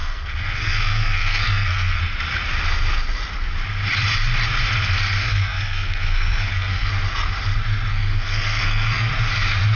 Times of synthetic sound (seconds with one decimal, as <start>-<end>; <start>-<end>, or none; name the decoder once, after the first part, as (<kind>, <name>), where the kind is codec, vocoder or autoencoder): 0.0-2.0 (codec, SNAC); 5.2-6.9; 7.9-9.1